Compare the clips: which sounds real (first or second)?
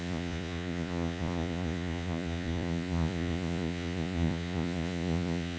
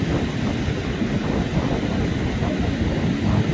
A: second